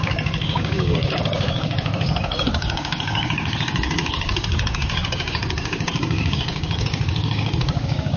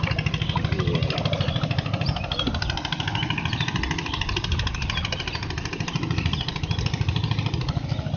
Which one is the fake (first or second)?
first